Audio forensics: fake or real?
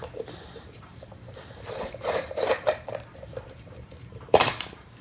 fake